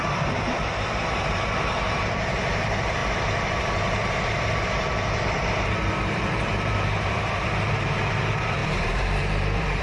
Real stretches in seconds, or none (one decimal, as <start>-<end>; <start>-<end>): none